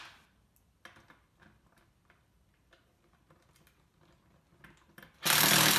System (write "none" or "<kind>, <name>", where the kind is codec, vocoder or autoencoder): none